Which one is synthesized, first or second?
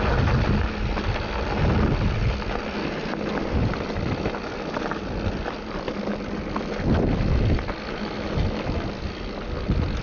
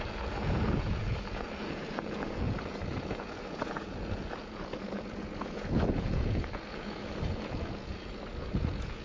second